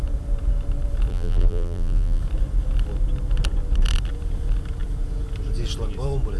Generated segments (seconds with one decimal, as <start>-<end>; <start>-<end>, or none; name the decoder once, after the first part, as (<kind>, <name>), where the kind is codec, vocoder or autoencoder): 1.1-2.2 (vocoder, BigVGAN v2)